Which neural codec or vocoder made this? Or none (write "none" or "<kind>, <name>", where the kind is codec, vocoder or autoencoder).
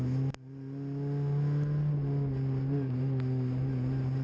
none